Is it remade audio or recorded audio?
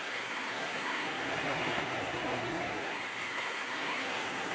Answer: remade